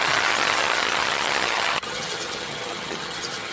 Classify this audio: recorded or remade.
remade